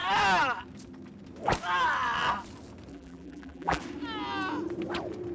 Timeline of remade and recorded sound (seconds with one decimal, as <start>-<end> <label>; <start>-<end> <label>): 0.0-2.9 recorded; 2.9-3.8 remade; 3.8-5.3 recorded